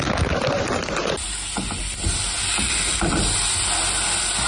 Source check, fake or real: real